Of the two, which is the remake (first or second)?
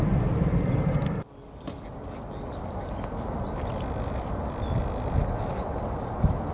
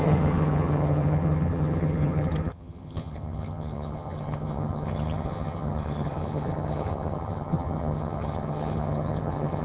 second